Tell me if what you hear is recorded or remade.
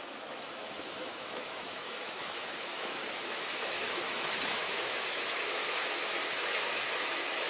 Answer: remade